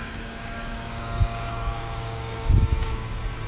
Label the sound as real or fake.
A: fake